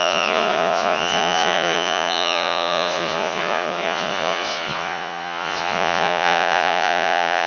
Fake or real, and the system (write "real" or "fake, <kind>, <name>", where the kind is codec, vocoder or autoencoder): fake, vocoder, Vocos